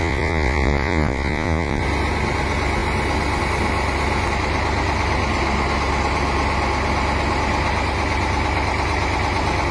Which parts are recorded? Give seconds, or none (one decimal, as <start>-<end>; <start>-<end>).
1.8-9.7